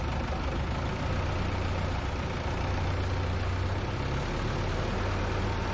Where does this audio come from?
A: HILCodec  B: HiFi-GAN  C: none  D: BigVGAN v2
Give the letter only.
C